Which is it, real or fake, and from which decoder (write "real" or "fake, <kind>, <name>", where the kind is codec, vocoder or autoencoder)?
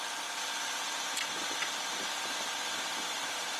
real